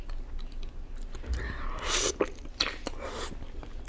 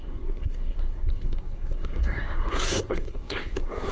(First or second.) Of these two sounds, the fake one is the second